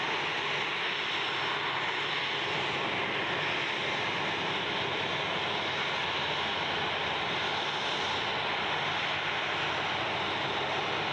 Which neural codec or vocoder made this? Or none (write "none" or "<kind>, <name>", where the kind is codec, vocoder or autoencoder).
none